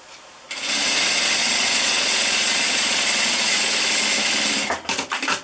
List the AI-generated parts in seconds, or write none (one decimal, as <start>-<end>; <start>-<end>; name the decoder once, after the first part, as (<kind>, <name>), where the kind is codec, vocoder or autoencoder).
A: 1.4-3.6 (vocoder, Vocos)